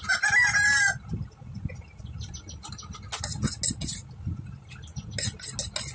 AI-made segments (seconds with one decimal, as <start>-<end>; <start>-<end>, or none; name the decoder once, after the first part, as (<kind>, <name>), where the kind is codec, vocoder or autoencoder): none